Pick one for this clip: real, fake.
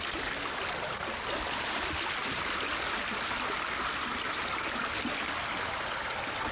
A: real